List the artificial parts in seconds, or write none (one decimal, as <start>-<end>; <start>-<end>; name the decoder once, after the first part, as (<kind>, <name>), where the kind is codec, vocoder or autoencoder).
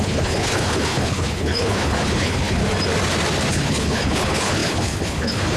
0.0-2.6 (codec, HILCodec); 3.5-5.6